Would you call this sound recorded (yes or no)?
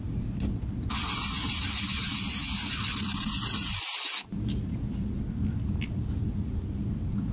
yes